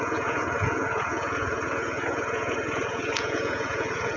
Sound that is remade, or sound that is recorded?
remade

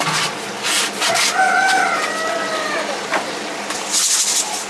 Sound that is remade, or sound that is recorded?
recorded